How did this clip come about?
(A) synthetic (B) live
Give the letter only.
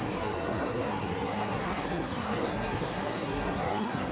A